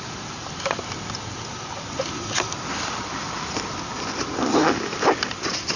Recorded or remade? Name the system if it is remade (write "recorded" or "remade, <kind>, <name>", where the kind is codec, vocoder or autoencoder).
recorded